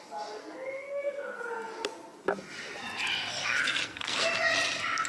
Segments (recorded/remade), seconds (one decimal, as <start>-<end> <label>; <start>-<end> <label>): 0.0-0.4 recorded; 0.4-1.4 remade; 1.4-3.4 recorded; 3.4-4.3 remade; 4.3-5.1 recorded